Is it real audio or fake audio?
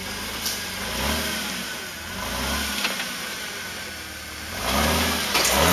real